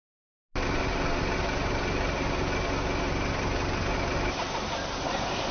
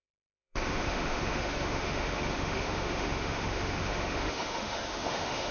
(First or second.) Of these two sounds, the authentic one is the first